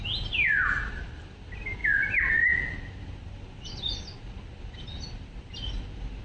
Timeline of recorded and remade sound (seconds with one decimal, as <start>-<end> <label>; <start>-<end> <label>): 0.0-6.2 recorded